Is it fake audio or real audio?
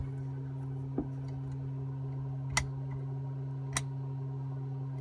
real